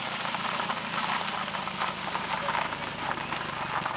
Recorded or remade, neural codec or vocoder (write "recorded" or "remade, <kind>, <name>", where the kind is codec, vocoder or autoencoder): recorded